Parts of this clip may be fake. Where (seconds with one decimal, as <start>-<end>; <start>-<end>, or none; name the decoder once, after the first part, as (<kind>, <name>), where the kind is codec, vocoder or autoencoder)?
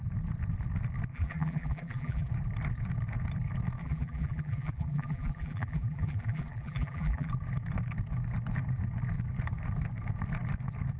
1.1-2.3 (vocoder, BigVGAN v2); 3.8-7.3